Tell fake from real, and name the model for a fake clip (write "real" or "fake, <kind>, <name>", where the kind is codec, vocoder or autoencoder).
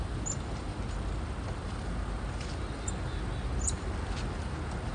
real